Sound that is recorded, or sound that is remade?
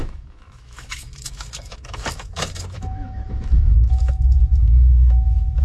remade